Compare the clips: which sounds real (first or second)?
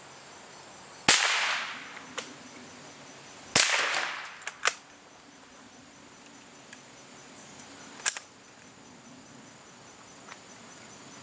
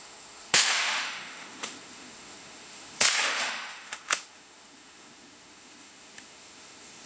first